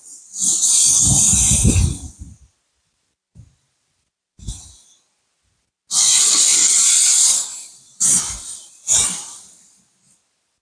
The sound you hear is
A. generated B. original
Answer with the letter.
B